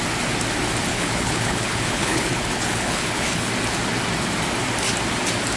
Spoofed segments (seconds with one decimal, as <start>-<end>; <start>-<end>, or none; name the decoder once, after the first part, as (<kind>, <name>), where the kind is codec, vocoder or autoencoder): 0.9-3.5 (codec, HILCodec)